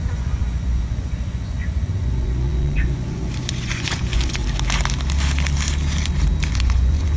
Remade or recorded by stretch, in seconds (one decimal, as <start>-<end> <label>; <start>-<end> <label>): 0.0-4.4 remade; 4.4-6.5 recorded; 6.5-7.2 remade